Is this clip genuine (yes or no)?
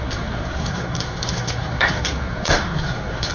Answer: no